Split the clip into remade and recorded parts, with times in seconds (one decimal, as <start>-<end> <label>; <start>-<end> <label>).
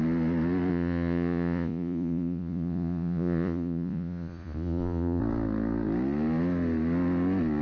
0.0-0.7 recorded; 0.7-5.2 remade; 5.2-7.6 recorded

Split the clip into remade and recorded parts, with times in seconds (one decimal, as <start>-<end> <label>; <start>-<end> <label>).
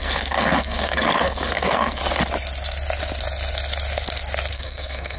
0.0-2.0 remade; 2.0-4.5 recorded; 4.5-5.2 remade